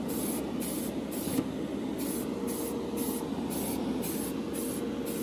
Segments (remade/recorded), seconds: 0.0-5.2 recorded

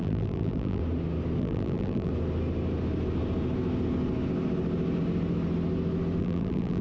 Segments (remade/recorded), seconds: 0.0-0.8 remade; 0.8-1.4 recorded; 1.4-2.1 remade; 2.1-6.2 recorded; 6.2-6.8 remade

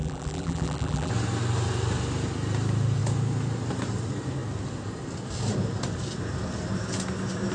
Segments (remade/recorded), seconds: 0.0-1.1 remade; 1.1-7.5 recorded